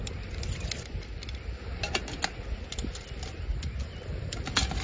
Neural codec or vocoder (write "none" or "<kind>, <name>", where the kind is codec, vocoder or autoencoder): none